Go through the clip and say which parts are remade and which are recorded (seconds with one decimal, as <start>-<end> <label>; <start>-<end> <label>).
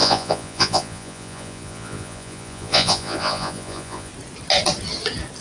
0.0-4.1 remade; 4.1-5.4 recorded